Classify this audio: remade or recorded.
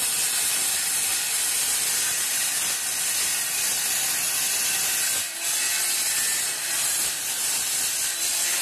recorded